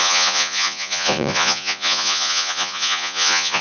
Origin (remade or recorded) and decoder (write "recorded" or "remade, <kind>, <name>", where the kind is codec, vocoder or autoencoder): remade, vocoder, Vocos